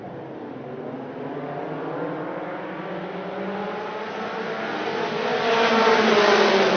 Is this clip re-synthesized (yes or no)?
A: no